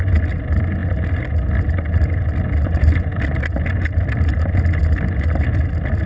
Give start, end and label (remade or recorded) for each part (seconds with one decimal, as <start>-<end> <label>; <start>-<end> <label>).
0.0-6.1 recorded